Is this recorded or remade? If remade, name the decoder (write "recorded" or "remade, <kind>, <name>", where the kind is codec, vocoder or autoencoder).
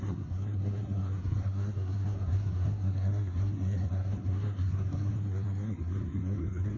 remade, codec, SNAC